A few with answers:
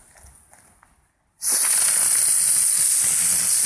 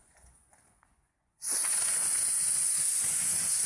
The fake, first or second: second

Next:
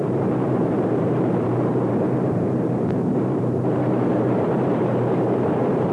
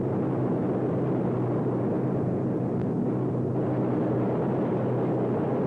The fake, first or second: first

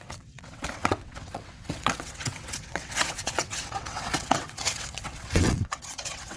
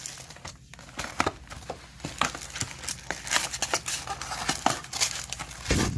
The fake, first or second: first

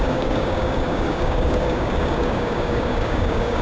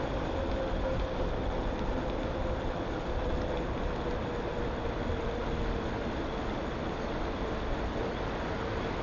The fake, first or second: first